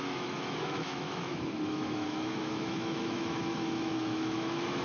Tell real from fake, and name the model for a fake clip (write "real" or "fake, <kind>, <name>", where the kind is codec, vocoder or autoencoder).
fake, autoencoder, DAC-VAE